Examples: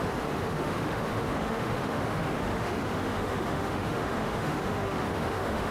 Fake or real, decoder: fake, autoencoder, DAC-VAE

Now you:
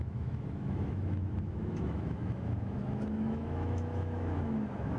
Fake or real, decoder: fake, autoencoder, DAC-VAE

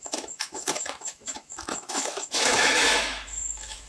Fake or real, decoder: fake, autoencoder, DAC-VAE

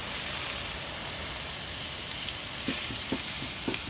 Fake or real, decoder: real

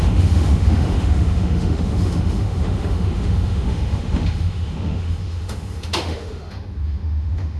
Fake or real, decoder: fake, autoencoder, DAC-VAE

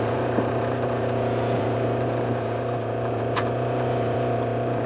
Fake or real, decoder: fake, vocoder, Vocos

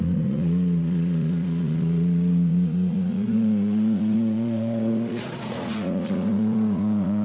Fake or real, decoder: fake, vocoder, Vocos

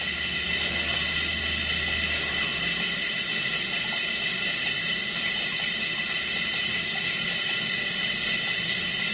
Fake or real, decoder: real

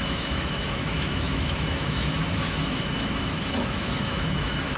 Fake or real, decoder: fake, autoencoder, DAC-VAE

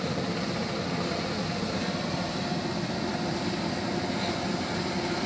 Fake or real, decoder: real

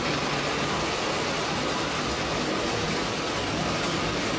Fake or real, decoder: real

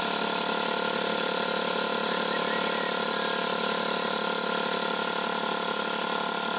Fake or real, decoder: real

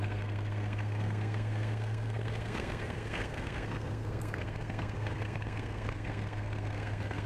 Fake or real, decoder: fake, codec, SNAC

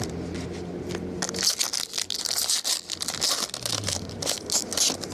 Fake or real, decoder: real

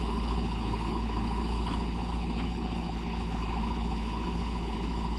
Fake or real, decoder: fake, codec, HILCodec